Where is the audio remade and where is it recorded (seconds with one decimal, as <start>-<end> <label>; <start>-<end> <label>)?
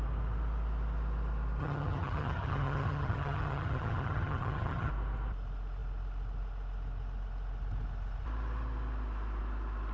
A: 0.0-1.6 recorded; 1.6-4.9 remade; 4.9-9.9 recorded